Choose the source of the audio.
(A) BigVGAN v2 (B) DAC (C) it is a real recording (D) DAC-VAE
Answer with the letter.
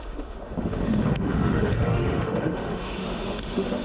D